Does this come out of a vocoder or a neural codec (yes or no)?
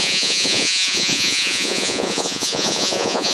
yes